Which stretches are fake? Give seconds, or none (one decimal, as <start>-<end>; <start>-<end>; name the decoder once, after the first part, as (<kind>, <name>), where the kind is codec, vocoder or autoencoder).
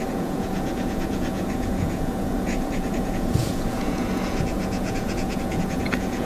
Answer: 0.0-6.3 (vocoder, Vocos)